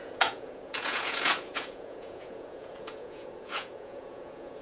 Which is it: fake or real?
fake